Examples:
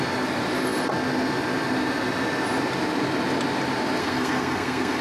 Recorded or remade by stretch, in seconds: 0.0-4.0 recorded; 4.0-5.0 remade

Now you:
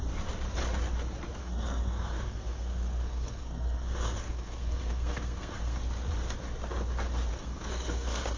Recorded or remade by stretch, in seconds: 0.0-1.4 recorded; 1.4-5.8 remade; 5.8-7.3 recorded; 7.3-8.4 remade